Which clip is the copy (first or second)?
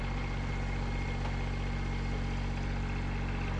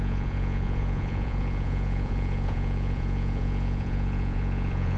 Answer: second